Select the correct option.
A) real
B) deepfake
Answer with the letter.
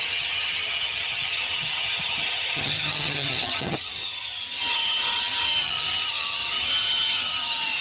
B